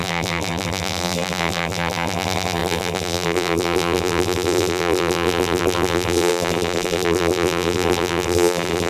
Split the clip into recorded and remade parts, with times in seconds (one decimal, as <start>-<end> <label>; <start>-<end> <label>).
0.0-8.9 remade